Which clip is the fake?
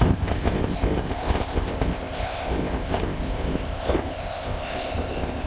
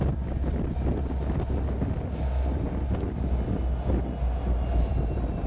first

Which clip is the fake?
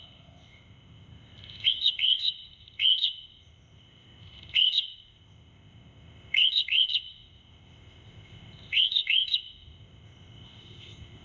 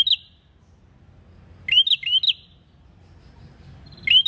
first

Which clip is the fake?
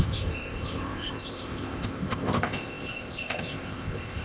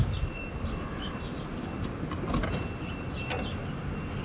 first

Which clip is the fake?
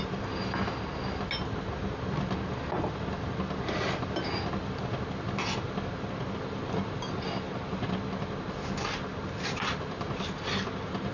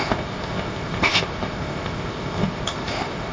second